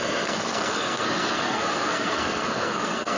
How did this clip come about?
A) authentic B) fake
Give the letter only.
B